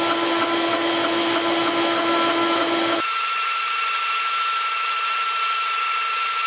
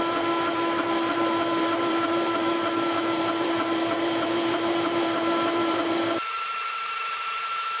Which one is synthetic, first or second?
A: second